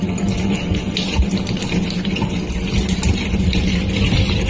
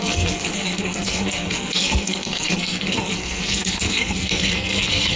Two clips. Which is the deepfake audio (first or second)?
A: second